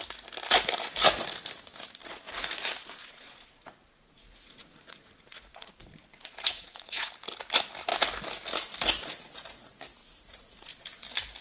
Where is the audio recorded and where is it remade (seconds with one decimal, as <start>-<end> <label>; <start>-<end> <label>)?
0.0-2.0 recorded; 2.0-7.1 remade; 7.1-10.0 recorded; 10.0-11.0 remade; 11.0-11.4 recorded